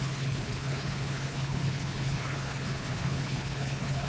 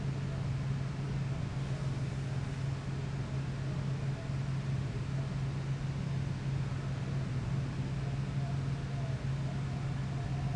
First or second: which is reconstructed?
first